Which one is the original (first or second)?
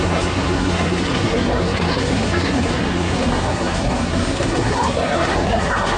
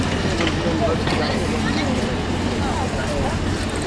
second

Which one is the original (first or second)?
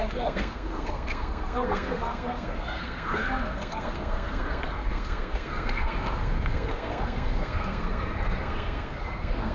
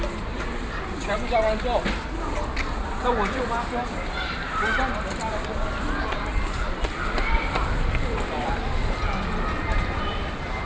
second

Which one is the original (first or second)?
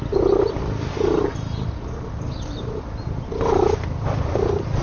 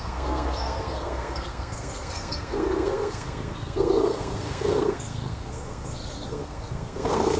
first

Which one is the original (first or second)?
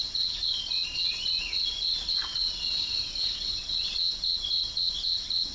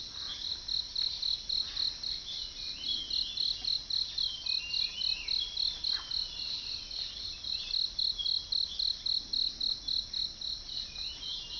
second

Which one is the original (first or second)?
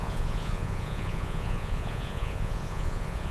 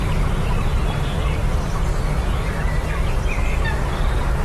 second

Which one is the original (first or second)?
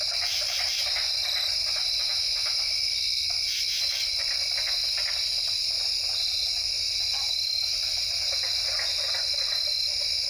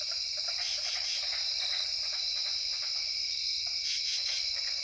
first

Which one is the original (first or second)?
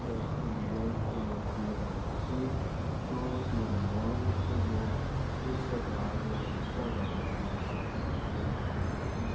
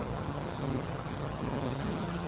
first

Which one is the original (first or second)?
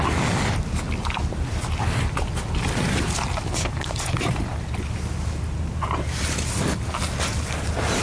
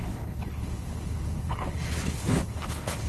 first